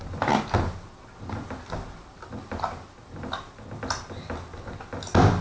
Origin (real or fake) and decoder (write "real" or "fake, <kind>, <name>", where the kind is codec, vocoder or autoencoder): real